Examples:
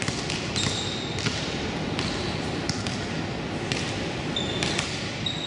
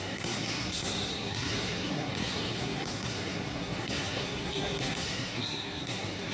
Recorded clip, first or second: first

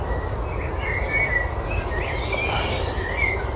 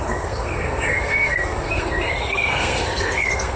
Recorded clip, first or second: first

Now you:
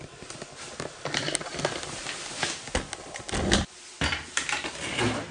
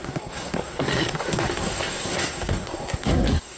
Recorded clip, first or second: first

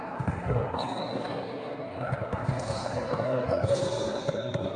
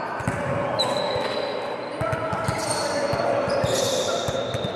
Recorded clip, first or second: second